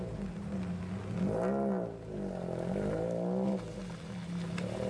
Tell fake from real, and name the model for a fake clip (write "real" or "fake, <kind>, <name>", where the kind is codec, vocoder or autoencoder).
real